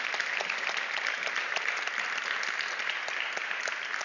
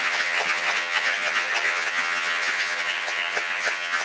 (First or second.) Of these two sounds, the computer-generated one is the second